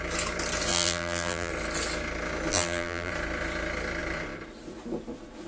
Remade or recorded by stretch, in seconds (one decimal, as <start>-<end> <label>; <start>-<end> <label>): 0.0-0.7 recorded; 0.7-1.5 remade; 1.5-2.5 recorded; 2.5-3.1 remade; 3.1-5.5 recorded